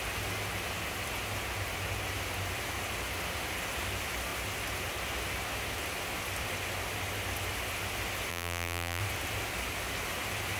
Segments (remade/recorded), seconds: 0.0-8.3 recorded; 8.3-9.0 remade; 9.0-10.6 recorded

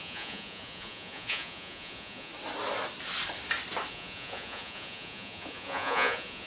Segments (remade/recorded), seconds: 0.0-2.3 remade; 2.3-3.9 recorded; 3.9-6.5 remade

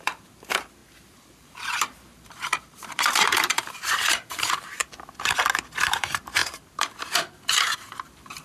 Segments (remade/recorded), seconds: 0.0-4.8 remade; 4.8-5.9 recorded; 5.9-8.4 remade

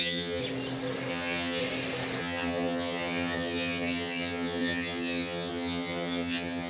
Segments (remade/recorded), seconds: 0.0-0.4 remade; 0.4-1.1 recorded; 1.1-1.6 remade; 1.6-2.2 recorded; 2.2-6.7 remade

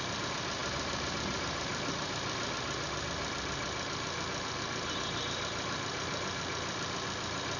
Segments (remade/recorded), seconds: 0.0-7.6 recorded